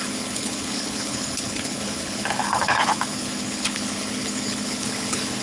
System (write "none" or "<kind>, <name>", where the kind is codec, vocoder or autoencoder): codec, HILCodec